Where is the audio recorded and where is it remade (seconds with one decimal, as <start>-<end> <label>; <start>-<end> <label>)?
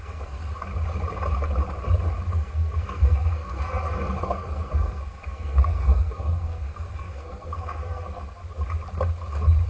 0.0-0.5 remade; 0.5-2.3 recorded; 2.3-8.4 remade; 8.4-9.7 recorded